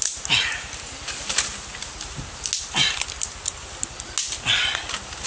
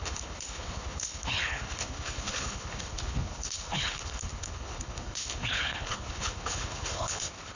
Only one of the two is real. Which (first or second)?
first